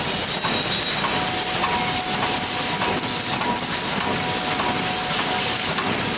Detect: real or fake real